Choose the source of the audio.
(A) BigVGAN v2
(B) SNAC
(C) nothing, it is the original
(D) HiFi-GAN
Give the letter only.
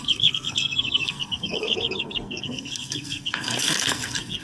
B